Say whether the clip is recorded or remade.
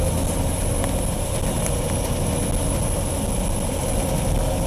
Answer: recorded